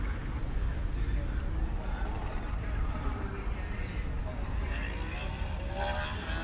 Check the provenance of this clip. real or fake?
real